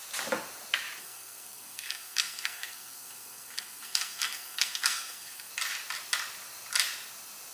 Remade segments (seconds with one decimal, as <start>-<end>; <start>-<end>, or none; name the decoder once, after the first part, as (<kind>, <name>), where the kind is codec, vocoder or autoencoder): 1.0-5.5 (codec, SNAC)